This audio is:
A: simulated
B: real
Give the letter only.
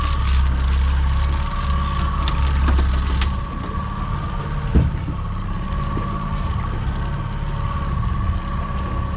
B